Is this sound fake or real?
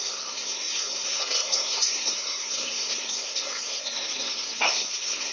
fake